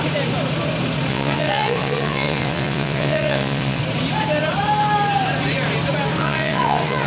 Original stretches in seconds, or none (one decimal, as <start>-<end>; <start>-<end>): 0.0-1.1; 3.8-6.2